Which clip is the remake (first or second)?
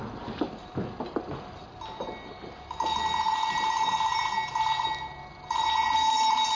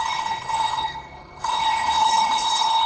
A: second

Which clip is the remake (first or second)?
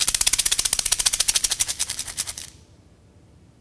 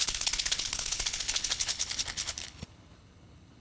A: second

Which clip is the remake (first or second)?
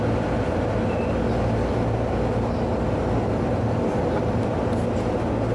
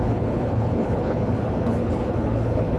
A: second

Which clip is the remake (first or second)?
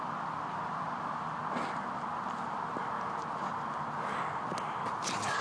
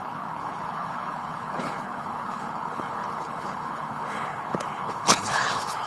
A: second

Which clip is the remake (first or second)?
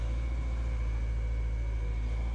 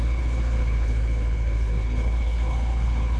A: second